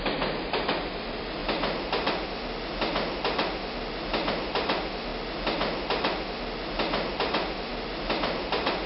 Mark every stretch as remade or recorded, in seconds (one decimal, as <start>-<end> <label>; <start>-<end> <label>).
0.0-1.4 remade; 1.4-4.3 recorded; 4.3-5.1 remade; 5.1-7.1 recorded; 7.1-8.9 remade